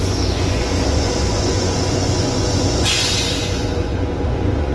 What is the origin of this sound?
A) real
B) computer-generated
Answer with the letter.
B